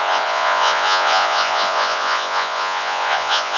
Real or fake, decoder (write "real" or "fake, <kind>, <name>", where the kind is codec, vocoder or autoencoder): fake, vocoder, Vocos